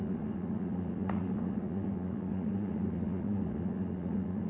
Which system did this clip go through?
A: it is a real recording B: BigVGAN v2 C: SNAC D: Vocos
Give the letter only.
D